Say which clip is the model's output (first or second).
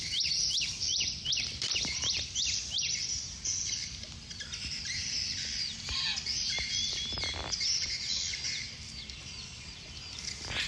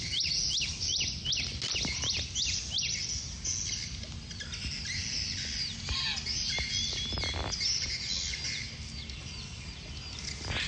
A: first